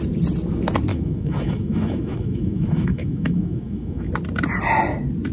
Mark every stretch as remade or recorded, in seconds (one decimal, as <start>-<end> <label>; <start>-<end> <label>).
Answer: 0.0-0.9 recorded; 0.9-4.1 remade; 4.1-5.3 recorded